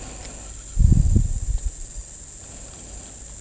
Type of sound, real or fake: real